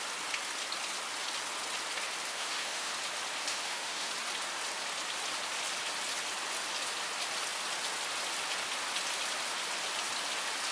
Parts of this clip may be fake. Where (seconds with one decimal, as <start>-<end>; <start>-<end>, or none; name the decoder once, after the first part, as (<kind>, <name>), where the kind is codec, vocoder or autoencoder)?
2.3-2.9 (autoencoder, DAC-VAE); 3.5-4.1